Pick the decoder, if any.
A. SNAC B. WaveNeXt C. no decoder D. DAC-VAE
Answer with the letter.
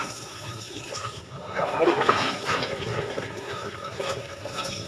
A